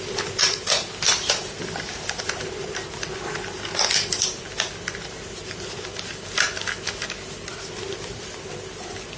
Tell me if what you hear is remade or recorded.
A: recorded